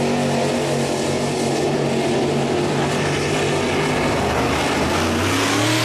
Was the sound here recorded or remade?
recorded